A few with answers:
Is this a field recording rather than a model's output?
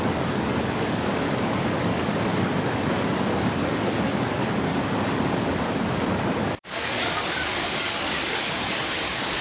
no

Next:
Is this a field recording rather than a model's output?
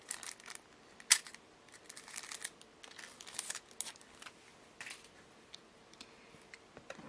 yes